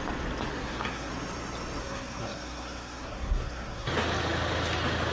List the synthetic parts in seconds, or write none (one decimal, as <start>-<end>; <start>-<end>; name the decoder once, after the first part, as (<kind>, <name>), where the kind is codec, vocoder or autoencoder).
0.5-1.1 (codec, SNAC); 1.8-3.9